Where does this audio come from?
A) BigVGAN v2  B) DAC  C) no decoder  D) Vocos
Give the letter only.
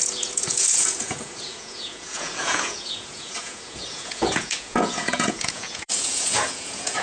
D